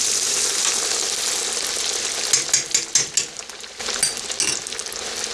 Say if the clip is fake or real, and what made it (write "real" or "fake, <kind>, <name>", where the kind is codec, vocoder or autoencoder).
real